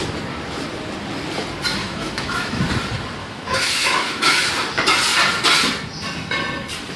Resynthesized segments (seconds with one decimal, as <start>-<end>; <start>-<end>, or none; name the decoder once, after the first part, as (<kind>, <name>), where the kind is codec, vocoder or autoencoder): 1.8-2.6 (autoencoder, DAC-VAE); 3.2-4.5